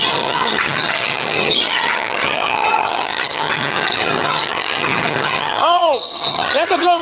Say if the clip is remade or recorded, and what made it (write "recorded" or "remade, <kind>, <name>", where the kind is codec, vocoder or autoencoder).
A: remade, vocoder, HiFi-GAN